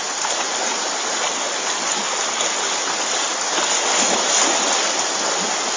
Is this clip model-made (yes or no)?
no